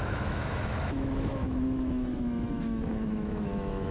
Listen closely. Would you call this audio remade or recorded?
remade